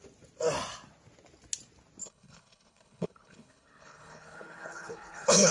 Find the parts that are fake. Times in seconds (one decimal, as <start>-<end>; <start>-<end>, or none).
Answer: 2.0-5.5

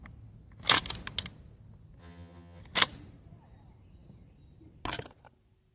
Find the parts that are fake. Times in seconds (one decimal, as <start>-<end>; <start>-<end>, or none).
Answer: 2.0-2.6

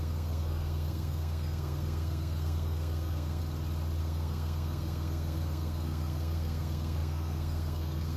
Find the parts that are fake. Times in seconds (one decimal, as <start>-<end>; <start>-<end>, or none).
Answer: 0.0-3.4; 4.0-8.2

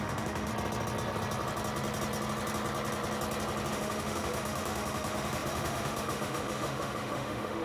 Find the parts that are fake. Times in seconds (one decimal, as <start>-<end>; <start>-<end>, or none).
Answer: 0.0-0.5; 3.7-7.6

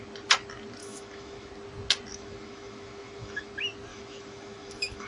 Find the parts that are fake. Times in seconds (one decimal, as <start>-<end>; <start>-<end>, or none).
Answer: 0.8-1.5; 2.1-3.5; 3.9-5.1